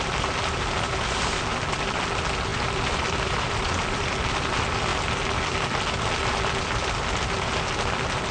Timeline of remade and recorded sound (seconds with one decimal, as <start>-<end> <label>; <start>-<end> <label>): 0.0-2.5 recorded; 2.5-4.1 remade; 4.1-8.3 recorded